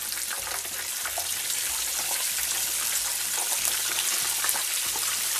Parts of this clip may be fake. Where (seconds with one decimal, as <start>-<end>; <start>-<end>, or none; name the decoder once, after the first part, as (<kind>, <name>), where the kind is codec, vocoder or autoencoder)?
none